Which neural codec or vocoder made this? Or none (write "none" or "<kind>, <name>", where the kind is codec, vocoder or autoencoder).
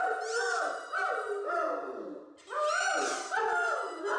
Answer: none